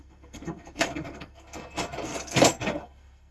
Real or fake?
fake